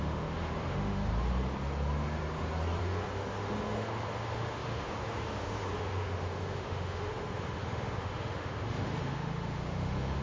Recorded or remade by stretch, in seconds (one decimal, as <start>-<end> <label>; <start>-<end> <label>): 0.0-1.1 remade; 1.1-2.8 recorded; 2.8-10.2 remade